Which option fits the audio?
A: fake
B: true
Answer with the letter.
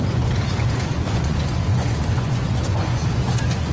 A